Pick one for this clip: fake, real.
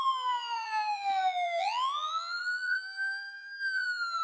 fake